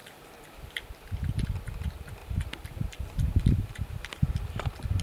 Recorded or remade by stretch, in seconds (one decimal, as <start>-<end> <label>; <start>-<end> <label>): 0.0-2.2 recorded; 2.2-5.0 remade